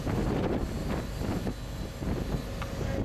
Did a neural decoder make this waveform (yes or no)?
no